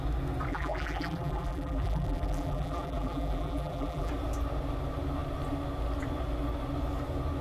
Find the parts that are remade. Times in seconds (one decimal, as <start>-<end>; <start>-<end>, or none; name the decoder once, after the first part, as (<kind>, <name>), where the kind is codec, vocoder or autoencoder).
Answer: 0.5-4.1 (vocoder, BigVGAN v2)